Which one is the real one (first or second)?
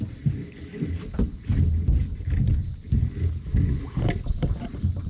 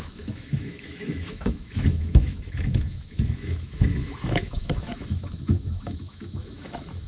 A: first